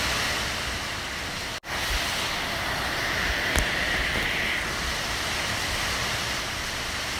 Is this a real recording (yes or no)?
yes